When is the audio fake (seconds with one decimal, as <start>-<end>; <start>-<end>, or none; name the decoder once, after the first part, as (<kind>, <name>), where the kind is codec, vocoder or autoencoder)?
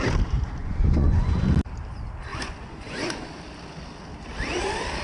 0.6-1.4 (vocoder, Vocos); 2.3-3.4